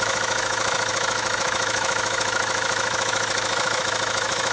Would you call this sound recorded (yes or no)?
no